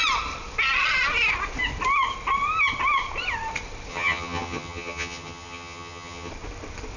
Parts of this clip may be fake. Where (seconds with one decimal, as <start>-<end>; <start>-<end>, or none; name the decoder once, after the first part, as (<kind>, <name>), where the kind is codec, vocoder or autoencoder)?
3.9-6.3 (vocoder, HiFi-GAN)